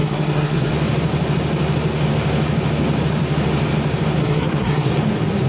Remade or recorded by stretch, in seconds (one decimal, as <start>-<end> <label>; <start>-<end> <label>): 0.0-0.7 remade; 0.7-4.2 recorded; 4.2-4.9 remade; 4.9-5.5 recorded